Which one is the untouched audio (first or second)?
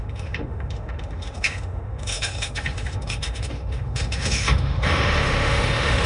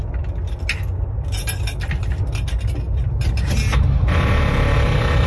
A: second